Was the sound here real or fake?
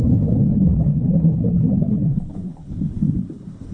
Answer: fake